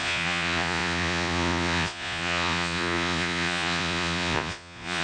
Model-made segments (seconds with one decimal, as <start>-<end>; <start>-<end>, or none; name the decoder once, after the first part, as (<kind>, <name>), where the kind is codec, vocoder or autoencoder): 0.0-5.0 (vocoder, Vocos)